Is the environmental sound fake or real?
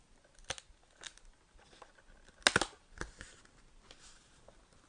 real